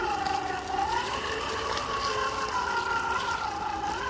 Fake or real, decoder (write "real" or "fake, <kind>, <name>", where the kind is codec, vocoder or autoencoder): real